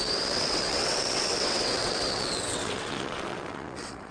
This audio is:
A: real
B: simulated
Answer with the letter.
B